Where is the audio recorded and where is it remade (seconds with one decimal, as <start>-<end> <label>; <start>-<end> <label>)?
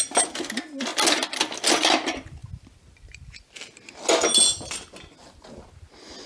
0.0-6.3 recorded